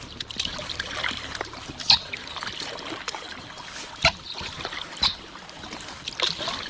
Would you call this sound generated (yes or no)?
no